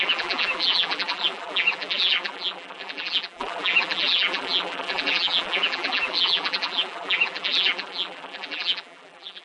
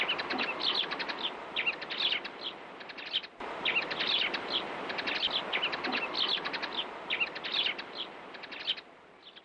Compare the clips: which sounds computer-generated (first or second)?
first